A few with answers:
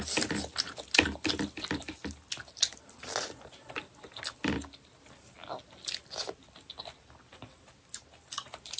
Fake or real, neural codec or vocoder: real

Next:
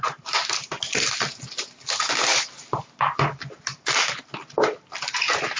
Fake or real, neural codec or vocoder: real